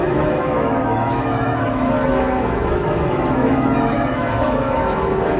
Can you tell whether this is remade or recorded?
remade